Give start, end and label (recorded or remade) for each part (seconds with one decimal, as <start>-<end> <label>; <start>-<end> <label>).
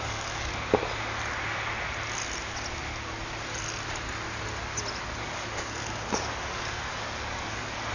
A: 0.0-0.5 remade; 0.5-5.2 recorded; 5.2-7.9 remade